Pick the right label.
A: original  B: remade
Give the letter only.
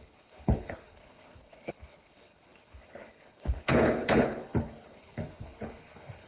B